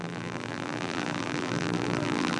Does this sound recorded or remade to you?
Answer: remade